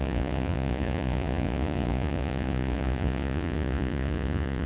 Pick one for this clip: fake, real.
fake